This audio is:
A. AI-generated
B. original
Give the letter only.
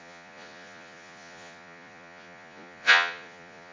A